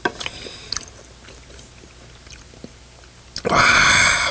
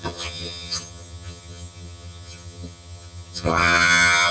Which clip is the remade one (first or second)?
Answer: second